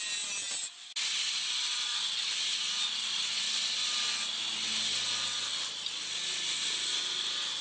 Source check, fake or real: real